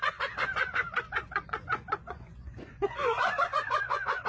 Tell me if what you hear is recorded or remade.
remade